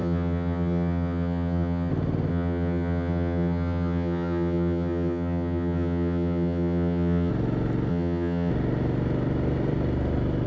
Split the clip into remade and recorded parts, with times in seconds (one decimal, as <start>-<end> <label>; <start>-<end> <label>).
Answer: 0.0-1.9 remade; 1.9-2.3 recorded; 2.3-7.3 remade; 7.3-7.9 recorded; 7.9-8.5 remade; 8.5-10.5 recorded